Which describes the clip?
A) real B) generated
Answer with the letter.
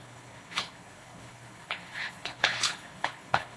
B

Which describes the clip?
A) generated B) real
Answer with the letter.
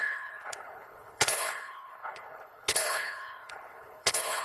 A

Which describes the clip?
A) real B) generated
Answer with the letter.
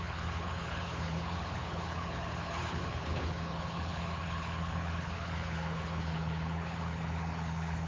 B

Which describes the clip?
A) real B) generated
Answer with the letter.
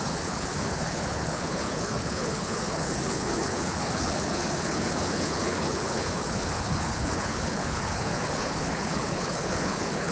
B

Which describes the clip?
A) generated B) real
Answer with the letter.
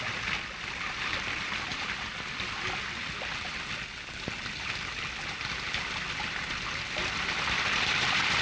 B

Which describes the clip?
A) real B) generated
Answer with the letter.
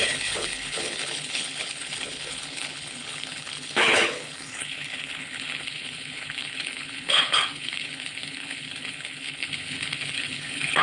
B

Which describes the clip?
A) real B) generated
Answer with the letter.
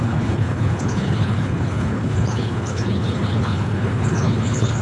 B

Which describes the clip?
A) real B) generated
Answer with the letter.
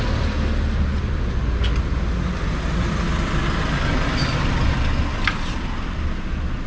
A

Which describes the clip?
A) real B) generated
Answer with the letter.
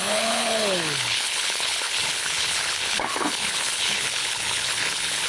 B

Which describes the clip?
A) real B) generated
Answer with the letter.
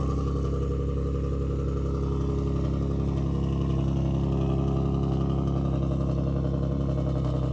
A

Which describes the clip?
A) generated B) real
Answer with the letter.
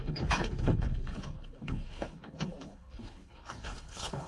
A